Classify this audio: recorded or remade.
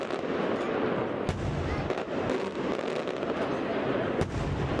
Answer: recorded